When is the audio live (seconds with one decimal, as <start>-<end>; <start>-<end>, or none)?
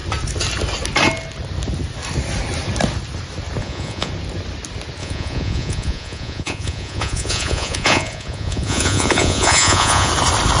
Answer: 0.0-3.6; 4.1-5.0; 10.1-10.6